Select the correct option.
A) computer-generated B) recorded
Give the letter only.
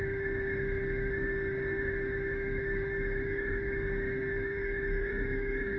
A